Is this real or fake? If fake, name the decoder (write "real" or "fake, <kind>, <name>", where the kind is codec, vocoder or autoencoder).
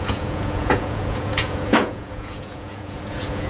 fake, vocoder, Vocos